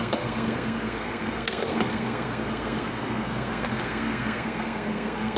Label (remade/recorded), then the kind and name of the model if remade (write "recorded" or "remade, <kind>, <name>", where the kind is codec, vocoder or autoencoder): remade, codec, SNAC